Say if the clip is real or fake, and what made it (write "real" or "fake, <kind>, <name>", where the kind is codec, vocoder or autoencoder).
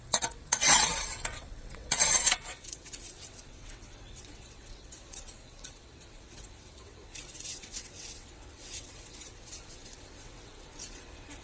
fake, vocoder, WaveNeXt